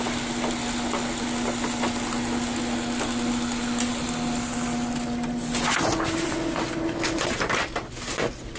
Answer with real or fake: real